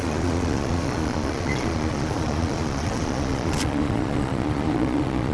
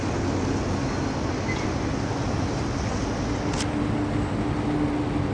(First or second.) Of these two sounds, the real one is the second